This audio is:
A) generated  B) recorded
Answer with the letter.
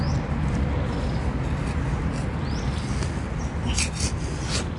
B